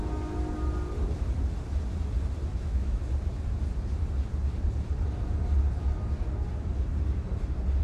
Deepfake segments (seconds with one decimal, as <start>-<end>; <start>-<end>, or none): 2.5-3.0